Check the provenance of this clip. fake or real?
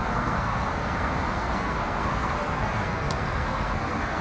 fake